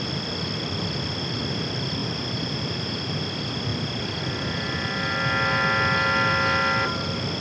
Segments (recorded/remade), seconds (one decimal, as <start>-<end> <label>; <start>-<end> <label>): 0.0-2.0 recorded; 2.0-3.2 remade; 3.2-7.4 recorded